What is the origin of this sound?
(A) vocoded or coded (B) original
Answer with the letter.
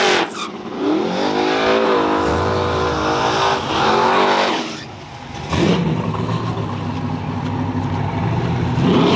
B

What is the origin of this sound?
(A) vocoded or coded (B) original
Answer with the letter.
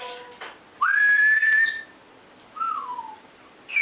B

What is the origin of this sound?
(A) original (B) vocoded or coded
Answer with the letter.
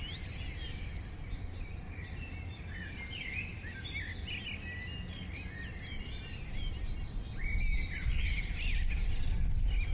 A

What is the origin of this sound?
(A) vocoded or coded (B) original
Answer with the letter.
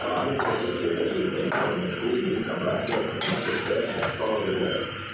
B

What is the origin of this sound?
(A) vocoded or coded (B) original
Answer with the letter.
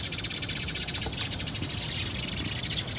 B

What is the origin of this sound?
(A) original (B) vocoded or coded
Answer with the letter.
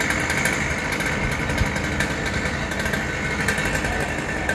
A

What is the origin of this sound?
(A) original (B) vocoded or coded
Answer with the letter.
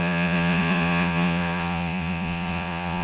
B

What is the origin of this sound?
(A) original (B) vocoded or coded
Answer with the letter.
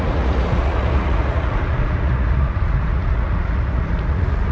B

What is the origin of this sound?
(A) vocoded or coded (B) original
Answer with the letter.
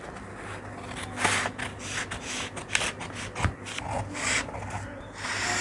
B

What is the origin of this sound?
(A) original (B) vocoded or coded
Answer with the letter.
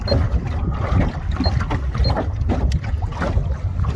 A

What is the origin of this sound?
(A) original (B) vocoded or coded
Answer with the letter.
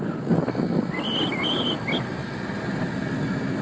A